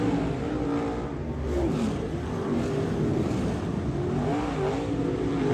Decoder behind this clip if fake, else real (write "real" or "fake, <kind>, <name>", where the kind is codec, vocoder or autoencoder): real